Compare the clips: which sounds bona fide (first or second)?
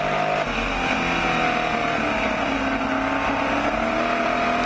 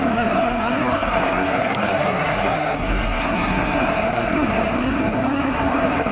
first